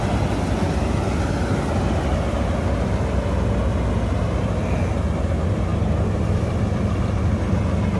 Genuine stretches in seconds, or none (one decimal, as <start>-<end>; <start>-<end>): 0.0-5.7; 7.6-8.0